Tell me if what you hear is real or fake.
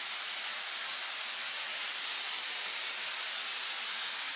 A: real